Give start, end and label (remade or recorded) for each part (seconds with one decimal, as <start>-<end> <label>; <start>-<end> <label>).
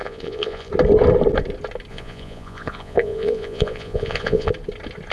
0.0-0.7 remade; 0.7-1.9 recorded; 1.9-4.5 remade; 4.5-5.1 recorded